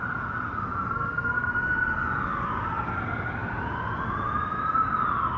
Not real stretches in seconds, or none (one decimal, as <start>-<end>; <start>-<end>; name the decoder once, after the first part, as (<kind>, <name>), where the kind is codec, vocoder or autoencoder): 0.9-1.5 (codec, SNAC)